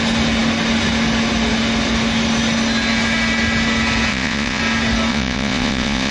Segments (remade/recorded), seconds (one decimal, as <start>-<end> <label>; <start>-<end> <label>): 0.0-4.1 recorded; 4.1-4.6 remade; 4.6-5.1 recorded; 5.1-6.1 remade